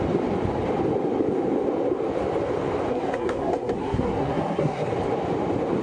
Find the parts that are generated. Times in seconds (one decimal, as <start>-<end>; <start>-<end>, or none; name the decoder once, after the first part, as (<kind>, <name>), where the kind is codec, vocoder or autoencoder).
2.9-4.9 (codec, SNAC)